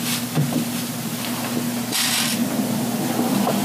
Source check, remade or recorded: recorded